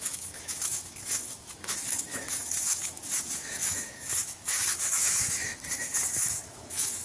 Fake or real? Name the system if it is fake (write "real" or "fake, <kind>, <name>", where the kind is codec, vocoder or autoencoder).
fake, autoencoder, DAC-VAE